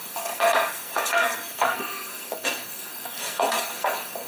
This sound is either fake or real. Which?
fake